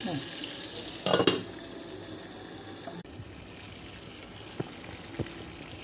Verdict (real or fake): real